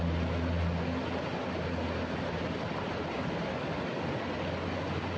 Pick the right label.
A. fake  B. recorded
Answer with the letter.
B